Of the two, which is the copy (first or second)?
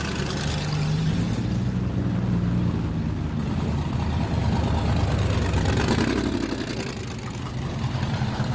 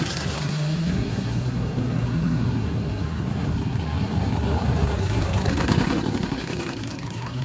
second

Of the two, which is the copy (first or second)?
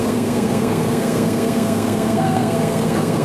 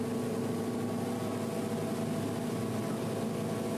first